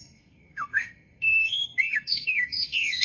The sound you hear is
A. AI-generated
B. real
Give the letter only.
A